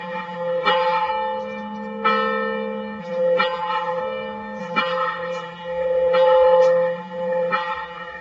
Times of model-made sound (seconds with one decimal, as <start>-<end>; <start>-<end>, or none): 0.0-1.1; 3.0-4.0; 4.6-8.2